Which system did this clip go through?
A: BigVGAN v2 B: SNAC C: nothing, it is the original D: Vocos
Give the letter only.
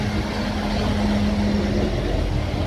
C